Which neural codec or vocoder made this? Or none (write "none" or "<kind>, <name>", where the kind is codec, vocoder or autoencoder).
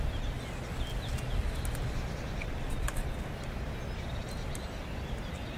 none